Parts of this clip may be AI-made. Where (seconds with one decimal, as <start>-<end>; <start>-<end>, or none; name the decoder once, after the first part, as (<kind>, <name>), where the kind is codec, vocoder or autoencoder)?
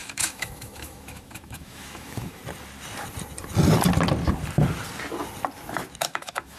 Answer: 0.0-2.4 (autoencoder, DAC-VAE); 6.0-6.6